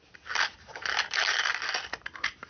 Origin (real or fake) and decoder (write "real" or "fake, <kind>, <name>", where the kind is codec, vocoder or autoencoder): real